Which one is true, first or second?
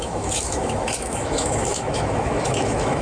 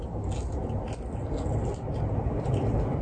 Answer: second